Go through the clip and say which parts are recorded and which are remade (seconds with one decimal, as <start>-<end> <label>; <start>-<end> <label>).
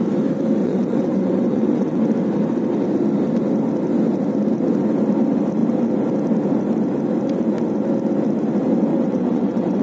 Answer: 0.0-0.6 recorded; 0.6-2.0 remade; 2.0-8.9 recorded; 8.9-9.8 remade